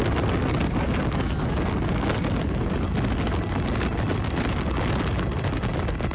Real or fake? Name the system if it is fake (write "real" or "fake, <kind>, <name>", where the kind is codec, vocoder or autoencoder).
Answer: real